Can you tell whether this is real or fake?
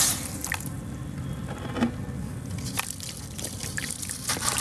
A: real